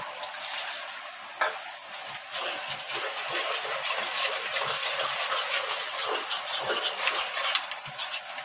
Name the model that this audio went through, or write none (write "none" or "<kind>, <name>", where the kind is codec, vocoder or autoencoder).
none